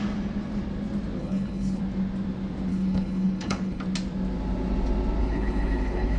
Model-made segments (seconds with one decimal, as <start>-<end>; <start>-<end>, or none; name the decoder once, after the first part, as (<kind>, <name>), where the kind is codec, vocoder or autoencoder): 1.2-1.8 (codec, HILCodec); 2.7-3.8; 5.2-6.2